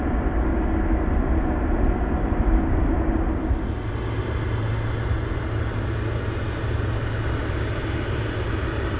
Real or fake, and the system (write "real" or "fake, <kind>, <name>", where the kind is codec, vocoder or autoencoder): real